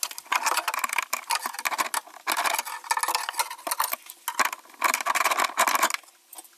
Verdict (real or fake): real